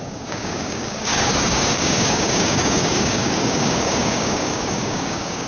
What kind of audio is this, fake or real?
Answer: fake